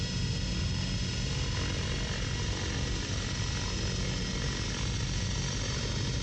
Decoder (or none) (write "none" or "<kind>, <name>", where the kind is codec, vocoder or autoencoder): none